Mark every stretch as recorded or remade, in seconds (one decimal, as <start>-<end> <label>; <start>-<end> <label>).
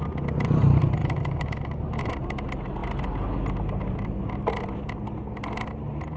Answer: 0.0-1.0 recorded; 1.0-2.1 remade; 2.1-6.2 recorded